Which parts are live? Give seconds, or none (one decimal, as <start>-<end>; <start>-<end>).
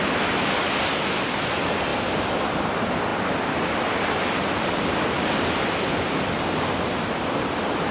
0.0-7.9